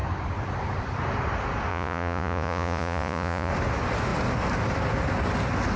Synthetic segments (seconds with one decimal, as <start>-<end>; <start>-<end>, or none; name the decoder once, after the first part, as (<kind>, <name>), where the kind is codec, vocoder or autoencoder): 1.7-3.5 (vocoder, Vocos)